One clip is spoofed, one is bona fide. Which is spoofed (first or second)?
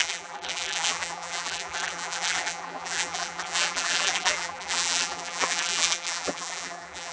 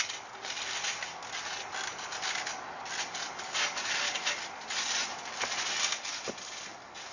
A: first